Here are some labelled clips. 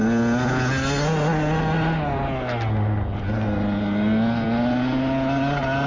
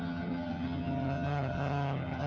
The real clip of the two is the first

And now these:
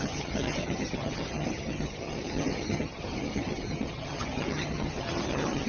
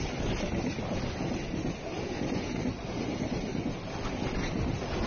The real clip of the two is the second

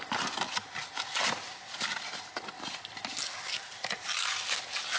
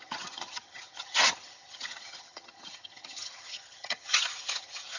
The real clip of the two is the first